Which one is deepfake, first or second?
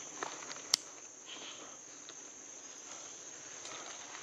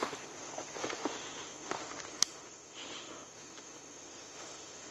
second